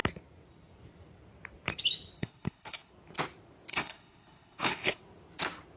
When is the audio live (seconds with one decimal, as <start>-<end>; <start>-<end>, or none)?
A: 0.0-2.2; 2.9-3.7; 5.0-5.8